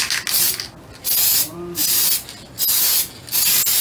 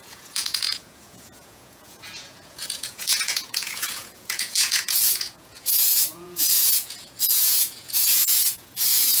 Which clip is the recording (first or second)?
first